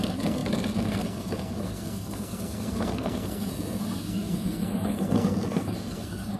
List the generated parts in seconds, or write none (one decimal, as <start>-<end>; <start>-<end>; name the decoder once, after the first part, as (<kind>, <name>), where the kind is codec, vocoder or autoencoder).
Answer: 0.0-6.4 (codec, SNAC)